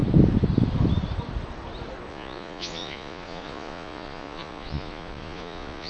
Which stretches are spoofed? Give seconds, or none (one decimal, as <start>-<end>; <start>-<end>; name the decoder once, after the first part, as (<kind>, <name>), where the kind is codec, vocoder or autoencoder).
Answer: 2.1-5.9 (vocoder, Vocos)